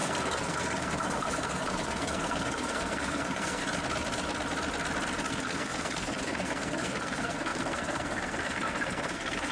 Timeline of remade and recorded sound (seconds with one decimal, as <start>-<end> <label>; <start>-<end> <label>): 0.0-3.6 remade; 3.6-5.3 recorded; 5.3-9.5 remade